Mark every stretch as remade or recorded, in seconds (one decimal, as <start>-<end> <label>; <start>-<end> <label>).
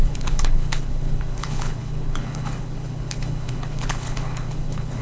0.0-5.0 remade